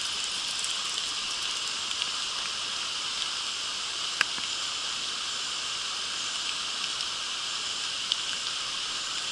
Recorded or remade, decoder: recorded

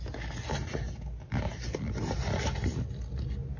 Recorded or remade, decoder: recorded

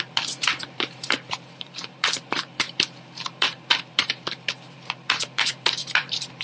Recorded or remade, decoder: remade, vocoder, BigVGAN v2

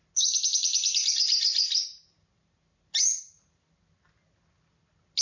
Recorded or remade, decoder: recorded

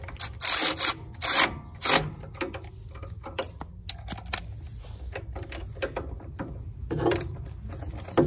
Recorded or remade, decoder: recorded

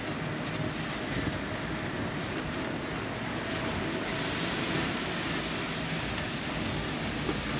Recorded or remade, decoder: recorded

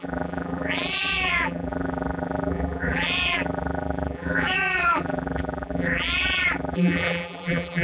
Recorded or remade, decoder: remade, vocoder, BigVGAN v2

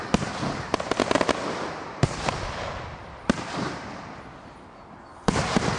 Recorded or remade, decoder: remade, vocoder, BigVGAN v2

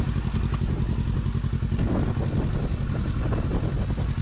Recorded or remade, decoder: recorded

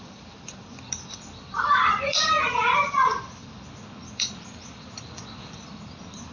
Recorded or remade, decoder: remade, vocoder, BigVGAN v2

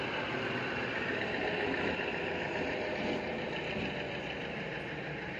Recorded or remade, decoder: recorded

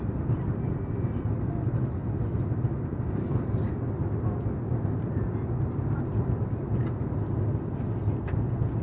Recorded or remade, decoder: recorded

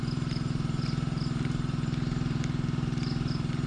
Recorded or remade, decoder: remade, vocoder, BigVGAN v2